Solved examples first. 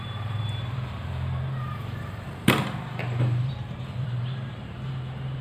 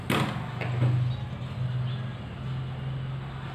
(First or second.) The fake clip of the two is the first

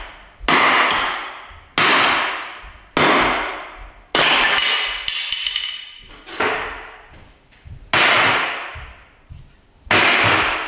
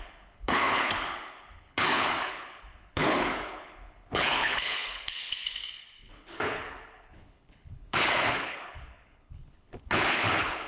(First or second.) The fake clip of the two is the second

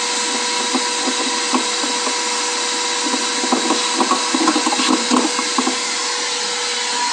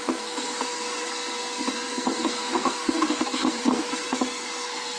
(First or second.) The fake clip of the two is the second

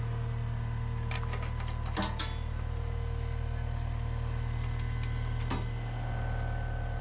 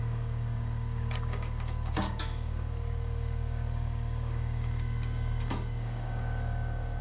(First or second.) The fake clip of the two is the second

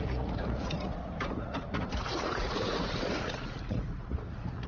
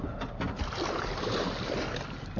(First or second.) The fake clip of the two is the first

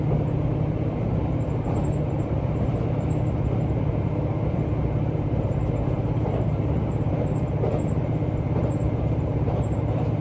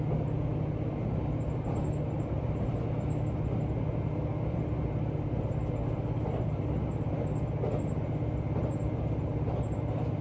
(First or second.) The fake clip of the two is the first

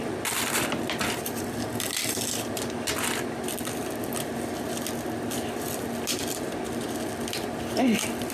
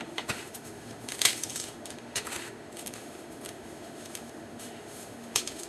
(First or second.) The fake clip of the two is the second